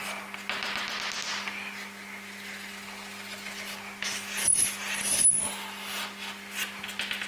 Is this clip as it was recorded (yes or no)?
yes